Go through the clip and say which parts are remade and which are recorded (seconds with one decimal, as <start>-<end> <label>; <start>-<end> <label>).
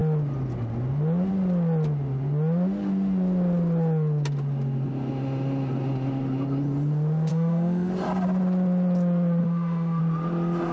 0.0-7.3 recorded; 7.3-7.9 remade; 7.9-9.4 recorded; 9.4-10.0 remade; 10.0-10.7 recorded